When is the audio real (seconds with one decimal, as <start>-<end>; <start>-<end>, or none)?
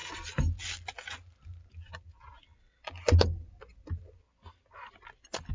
0.0-5.5